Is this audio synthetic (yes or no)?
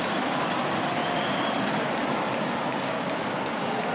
no